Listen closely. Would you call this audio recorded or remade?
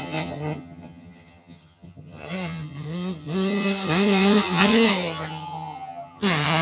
remade